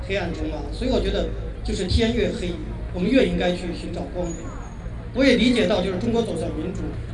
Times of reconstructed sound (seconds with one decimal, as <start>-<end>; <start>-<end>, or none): none